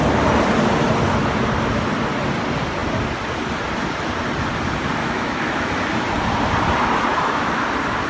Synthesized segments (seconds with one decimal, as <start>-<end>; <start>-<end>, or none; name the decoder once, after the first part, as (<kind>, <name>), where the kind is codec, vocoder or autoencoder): 5.0-5.7 (autoencoder, DAC-VAE); 7.1-7.6